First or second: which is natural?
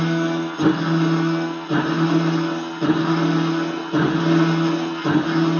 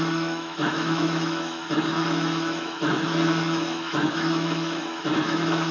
first